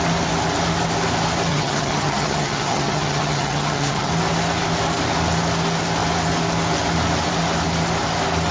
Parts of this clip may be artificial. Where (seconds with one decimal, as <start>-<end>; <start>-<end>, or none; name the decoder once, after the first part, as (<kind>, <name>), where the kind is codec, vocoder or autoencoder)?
1.5-4.1 (vocoder, HiFi-GAN)